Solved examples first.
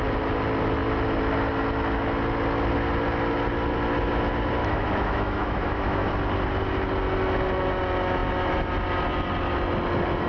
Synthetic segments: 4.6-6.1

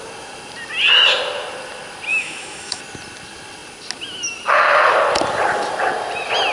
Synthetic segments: 2.1-2.8